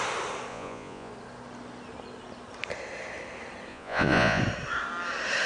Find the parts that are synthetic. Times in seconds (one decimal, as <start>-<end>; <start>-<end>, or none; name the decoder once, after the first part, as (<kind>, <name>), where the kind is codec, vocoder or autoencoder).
0.5-1.1 (vocoder, Vocos); 3.7-4.4